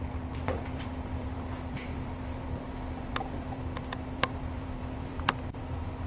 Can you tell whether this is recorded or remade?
remade